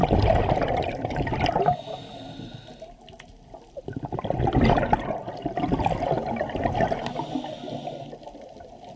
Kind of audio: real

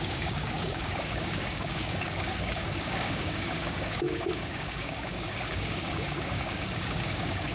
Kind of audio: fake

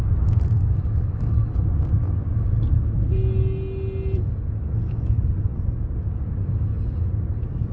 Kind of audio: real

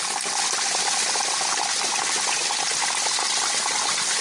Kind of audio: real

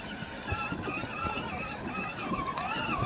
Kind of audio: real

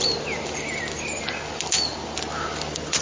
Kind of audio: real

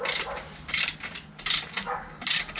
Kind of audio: real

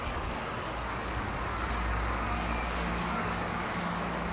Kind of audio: fake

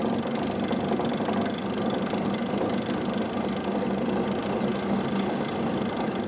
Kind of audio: real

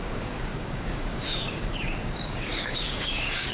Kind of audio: fake